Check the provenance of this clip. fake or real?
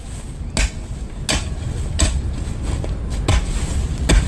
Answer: real